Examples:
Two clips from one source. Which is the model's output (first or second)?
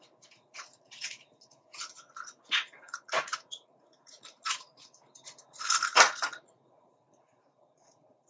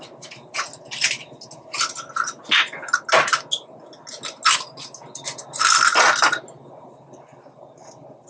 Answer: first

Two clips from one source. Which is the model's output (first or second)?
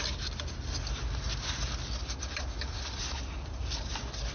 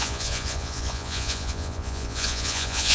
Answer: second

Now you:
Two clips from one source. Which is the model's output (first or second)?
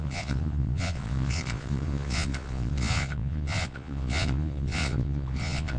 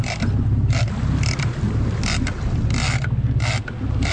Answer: first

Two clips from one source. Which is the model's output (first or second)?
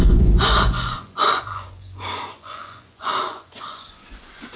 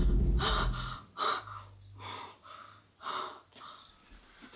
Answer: first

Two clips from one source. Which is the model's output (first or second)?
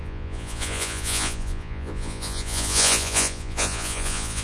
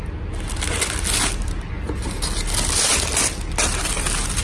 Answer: first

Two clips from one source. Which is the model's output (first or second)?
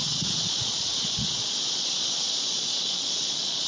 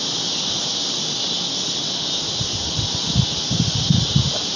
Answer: first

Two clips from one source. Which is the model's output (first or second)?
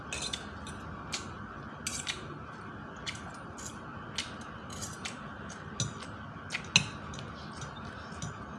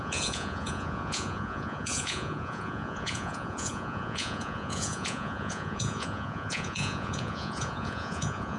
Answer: second